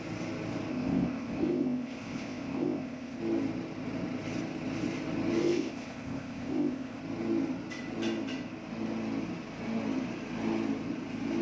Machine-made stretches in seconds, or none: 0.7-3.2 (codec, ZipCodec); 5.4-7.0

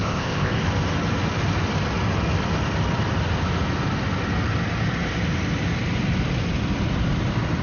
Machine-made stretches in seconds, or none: 0.0-0.6 (codec, ZipCodec)

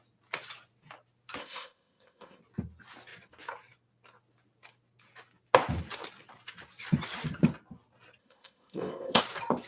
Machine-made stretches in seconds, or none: 1.4-2.4 (codec, ZipCodec); 8.2-9.2

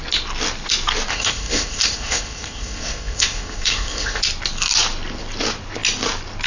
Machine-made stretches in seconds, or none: 1.1-4.2 (codec, ZipCodec)

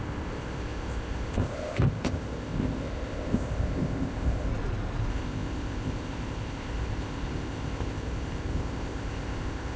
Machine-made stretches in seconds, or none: 0.0-4.5 (codec, ZipCodec); 5.1-9.8